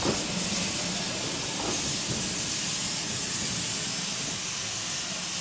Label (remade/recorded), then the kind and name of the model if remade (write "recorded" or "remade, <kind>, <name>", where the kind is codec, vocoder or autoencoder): recorded